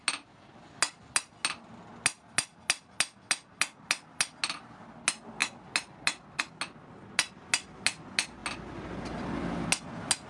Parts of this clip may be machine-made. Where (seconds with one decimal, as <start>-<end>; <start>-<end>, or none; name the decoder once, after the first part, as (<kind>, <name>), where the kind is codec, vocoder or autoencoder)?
none